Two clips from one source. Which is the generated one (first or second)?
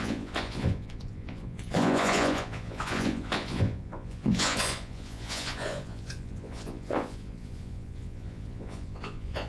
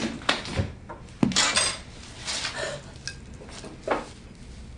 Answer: first